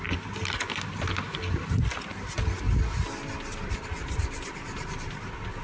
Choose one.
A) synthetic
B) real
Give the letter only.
B